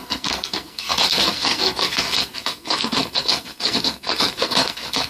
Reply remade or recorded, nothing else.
remade